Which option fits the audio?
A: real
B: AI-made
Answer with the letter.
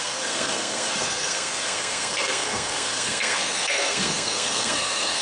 B